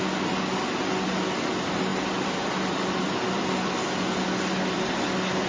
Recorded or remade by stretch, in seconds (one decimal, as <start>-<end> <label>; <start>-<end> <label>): 0.0-5.5 recorded